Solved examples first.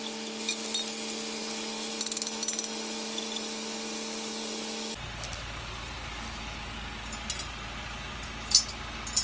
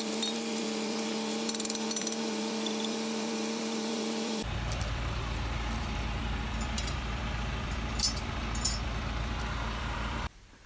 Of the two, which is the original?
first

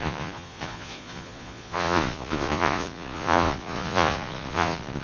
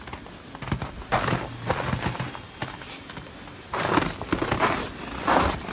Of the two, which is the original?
second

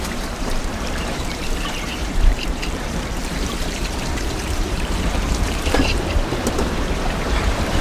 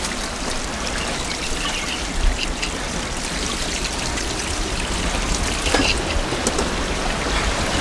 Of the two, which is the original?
second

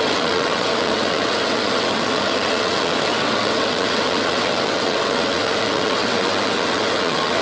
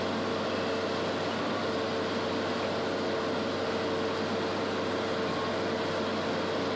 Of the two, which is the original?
second